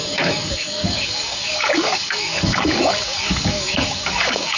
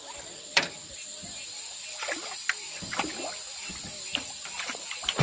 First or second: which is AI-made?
first